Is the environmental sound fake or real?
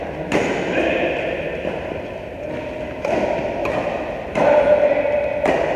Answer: real